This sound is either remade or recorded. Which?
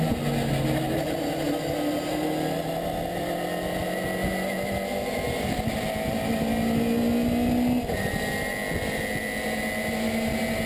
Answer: recorded